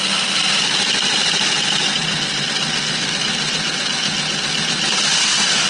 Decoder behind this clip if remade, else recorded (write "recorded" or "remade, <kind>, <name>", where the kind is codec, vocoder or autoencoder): recorded